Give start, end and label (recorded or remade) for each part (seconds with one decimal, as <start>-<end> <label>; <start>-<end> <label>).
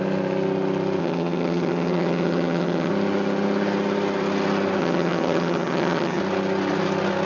0.0-1.0 recorded; 1.0-2.9 remade; 2.9-4.8 recorded; 4.8-6.2 remade; 6.2-7.3 recorded